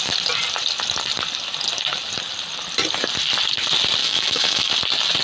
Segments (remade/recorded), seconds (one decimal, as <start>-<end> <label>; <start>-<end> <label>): 0.0-4.0 recorded; 4.0-4.7 remade; 4.7-5.2 recorded